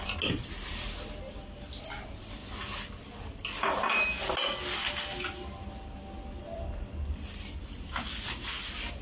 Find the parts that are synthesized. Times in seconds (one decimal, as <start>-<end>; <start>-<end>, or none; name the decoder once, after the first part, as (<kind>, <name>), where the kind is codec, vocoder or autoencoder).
none